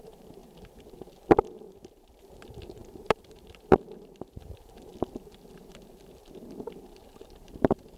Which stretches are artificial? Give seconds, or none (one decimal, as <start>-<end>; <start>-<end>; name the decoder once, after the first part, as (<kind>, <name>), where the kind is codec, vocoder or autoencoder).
0.0-0.4 (vocoder, BigVGAN v2); 2.2-4.9; 7.3-8.0